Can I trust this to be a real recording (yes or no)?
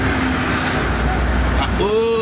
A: yes